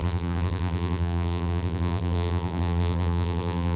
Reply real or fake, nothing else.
fake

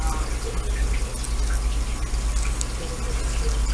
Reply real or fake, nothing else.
real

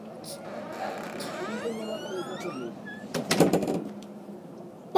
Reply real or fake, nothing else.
fake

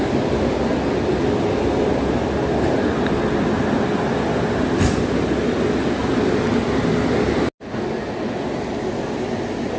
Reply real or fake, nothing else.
real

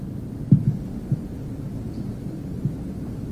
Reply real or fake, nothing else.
real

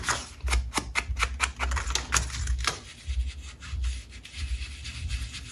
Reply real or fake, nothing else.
real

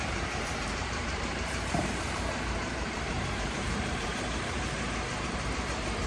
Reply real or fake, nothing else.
fake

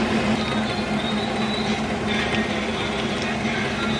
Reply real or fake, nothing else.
real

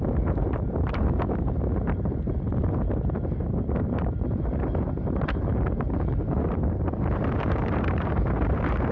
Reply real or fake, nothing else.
fake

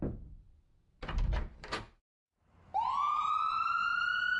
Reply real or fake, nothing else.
fake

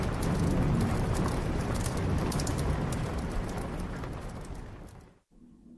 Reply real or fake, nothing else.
real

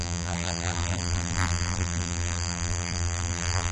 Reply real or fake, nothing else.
fake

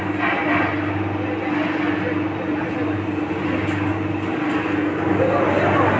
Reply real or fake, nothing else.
real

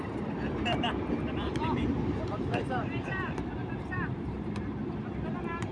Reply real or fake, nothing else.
fake